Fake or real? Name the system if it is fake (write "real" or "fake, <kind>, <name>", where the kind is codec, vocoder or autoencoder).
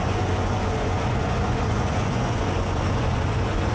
fake, vocoder, Vocos